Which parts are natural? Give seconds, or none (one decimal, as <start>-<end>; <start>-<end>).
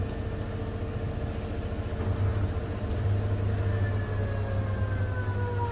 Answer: 0.0-2.3; 3.1-5.7